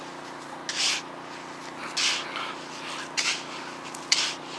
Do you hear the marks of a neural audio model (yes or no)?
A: no